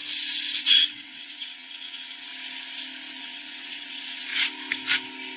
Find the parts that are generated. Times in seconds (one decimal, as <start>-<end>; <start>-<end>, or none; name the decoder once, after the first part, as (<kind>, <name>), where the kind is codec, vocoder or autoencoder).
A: 0.6-2.3 (vocoder, WaveNeXt); 3.2-4.3